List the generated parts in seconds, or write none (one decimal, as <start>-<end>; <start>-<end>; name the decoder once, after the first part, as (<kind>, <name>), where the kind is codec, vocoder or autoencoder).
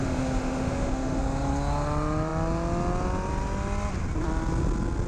0.0-1.2 (autoencoder, DAC-VAE)